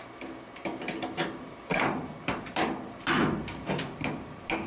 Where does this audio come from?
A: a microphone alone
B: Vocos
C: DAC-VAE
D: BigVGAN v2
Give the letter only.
D